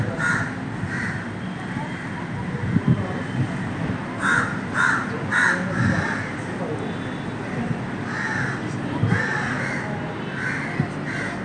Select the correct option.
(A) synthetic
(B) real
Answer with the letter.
B